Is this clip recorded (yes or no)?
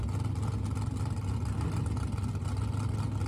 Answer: yes